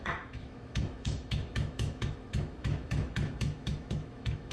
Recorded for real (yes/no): no